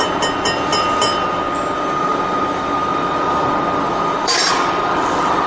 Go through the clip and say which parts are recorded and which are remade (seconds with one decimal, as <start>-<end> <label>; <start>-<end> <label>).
0.0-0.7 recorded; 0.7-1.4 remade; 1.4-2.1 recorded; 2.1-5.5 remade